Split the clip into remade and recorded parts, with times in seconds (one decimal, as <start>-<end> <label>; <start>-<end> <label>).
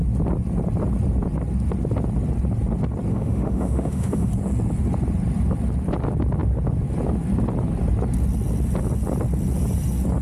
0.0-3.1 recorded; 3.1-4.3 remade; 4.3-10.2 recorded